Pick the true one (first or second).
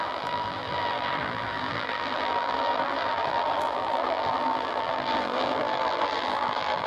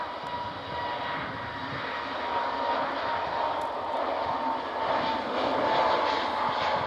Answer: second